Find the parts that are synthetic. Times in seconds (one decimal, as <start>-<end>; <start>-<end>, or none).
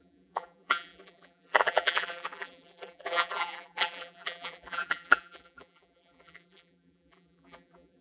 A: 0.0-8.0